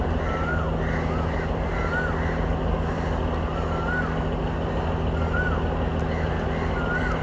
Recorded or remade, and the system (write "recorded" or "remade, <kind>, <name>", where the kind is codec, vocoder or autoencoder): recorded